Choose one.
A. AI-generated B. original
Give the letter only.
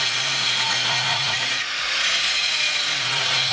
A